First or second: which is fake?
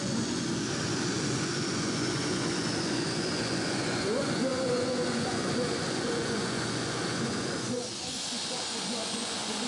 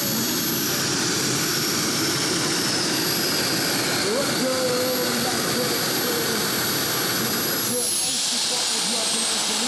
first